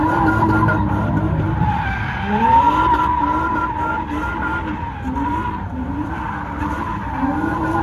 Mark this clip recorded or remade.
recorded